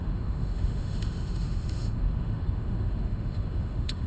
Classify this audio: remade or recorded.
remade